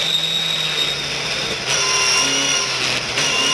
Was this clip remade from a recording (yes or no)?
no